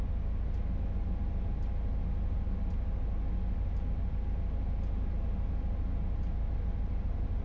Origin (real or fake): real